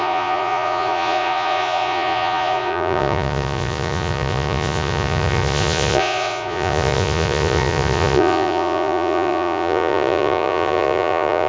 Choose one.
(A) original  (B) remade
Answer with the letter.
B